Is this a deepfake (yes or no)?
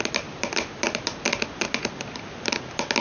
no